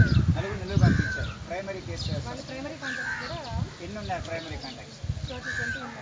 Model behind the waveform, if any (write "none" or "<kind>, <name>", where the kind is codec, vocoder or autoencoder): none